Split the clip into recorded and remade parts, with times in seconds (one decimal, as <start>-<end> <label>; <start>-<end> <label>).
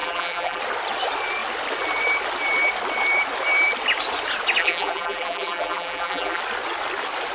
0.0-0.6 remade; 0.6-4.6 recorded; 4.6-6.4 remade; 6.4-7.3 recorded